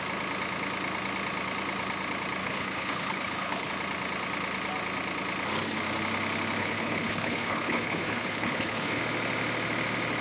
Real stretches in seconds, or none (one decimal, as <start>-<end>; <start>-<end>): 0.0-2.4; 3.7-6.6; 9.0-10.2